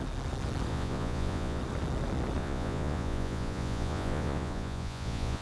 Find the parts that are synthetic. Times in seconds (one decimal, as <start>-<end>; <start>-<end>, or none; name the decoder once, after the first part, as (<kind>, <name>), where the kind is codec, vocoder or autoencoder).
0.7-1.6 (vocoder, Vocos); 2.4-5.4